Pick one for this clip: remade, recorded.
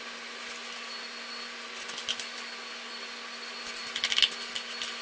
recorded